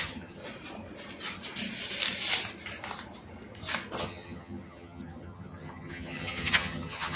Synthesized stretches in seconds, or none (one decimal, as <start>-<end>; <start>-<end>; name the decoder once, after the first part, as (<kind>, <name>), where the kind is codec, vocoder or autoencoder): 0.0-0.4 (vocoder, HiFi-GAN); 4.0-7.2

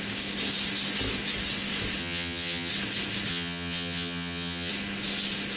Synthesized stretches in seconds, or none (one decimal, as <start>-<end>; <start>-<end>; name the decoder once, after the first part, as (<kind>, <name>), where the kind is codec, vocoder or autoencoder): 2.0-2.7 (vocoder, HiFi-GAN); 3.3-4.7

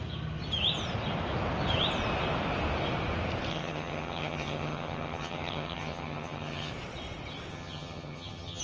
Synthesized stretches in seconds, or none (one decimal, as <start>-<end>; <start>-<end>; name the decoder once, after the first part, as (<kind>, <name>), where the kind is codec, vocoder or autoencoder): 3.5-6.7 (vocoder, HiFi-GAN); 7.5-8.6

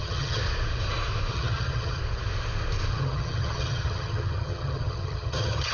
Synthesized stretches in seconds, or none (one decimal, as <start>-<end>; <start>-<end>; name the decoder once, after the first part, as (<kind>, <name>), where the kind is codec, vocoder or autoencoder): 0.0-0.4 (vocoder, HiFi-GAN); 1.3-2.0; 2.9-5.7

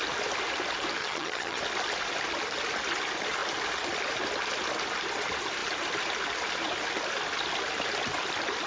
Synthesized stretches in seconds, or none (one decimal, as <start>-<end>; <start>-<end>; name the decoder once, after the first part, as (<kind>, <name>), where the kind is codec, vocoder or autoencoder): 1.0-1.6 (vocoder, HiFi-GAN)

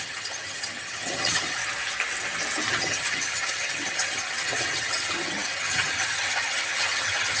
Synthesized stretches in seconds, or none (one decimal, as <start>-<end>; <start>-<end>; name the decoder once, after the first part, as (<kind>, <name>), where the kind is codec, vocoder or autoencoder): 0.0-1.6 (vocoder, HiFi-GAN); 2.7-7.4

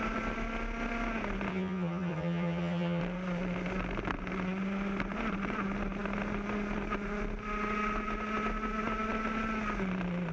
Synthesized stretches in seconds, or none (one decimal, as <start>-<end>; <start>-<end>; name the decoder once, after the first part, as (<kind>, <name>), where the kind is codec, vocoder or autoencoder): 1.5-3.0 (vocoder, HiFi-GAN)

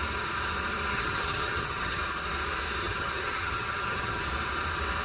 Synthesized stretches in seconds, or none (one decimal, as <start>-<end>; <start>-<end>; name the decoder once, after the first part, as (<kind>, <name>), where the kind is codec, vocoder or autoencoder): 0.9-2.0 (vocoder, HiFi-GAN); 2.8-4.2